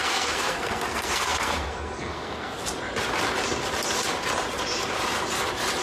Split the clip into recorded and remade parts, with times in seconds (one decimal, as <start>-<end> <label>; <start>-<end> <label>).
0.0-2.6 remade; 2.6-5.8 recorded